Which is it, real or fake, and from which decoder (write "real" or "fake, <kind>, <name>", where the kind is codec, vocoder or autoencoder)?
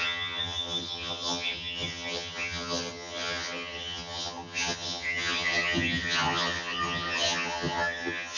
fake, vocoder, HiFi-GAN